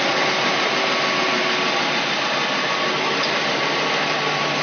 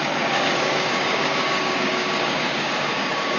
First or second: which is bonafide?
first